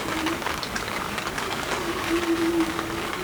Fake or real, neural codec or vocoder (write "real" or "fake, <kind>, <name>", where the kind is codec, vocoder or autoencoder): fake, codec, DAC